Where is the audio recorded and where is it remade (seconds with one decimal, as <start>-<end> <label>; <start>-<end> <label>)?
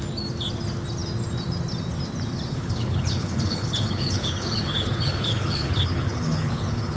0.0-2.5 recorded; 2.5-7.0 remade